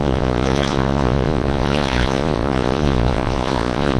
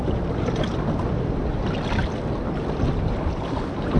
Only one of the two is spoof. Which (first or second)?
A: first